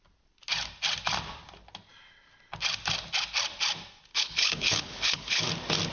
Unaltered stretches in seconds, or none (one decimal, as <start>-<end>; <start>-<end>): 0.0-4.1; 5.4-5.9

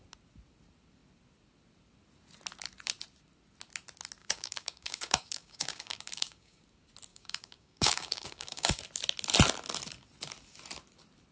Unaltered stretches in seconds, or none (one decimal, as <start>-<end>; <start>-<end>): 0.0-4.2; 6.6-7.1; 8.8-11.3

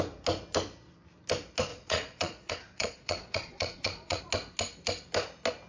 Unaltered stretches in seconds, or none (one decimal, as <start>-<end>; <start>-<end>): 0.0-1.7; 4.2-5.7

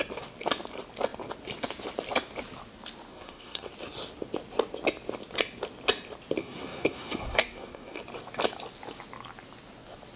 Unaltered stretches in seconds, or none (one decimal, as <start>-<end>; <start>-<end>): 0.0-3.1; 3.7-6.4; 8.0-10.2